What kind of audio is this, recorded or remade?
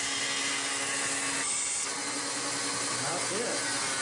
recorded